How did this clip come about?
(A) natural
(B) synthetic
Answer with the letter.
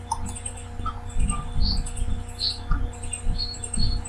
A